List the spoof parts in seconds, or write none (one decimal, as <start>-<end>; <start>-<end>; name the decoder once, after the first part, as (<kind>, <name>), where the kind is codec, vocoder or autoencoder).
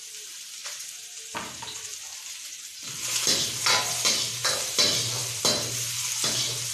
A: 0.0-6.7 (vocoder, BigVGAN v2)